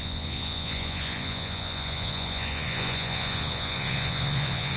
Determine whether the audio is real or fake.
fake